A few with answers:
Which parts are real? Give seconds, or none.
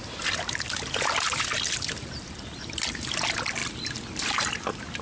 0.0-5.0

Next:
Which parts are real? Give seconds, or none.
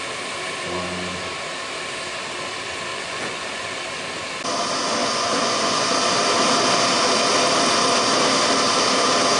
0.0-2.9; 3.8-5.0; 5.9-9.4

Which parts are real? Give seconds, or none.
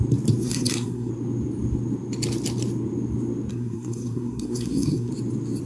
0.0-0.4; 1.1-3.5; 5.1-5.7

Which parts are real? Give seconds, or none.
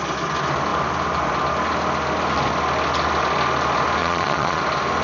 0.0-4.0; 4.6-5.0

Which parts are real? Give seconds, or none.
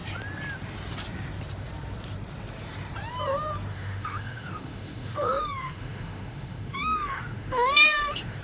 0.0-3.7